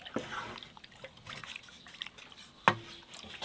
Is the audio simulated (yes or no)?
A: no